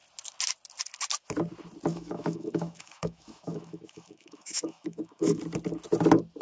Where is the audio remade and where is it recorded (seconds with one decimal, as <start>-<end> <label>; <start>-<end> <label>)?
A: 0.0-1.9 recorded; 1.9-5.4 remade; 5.4-6.4 recorded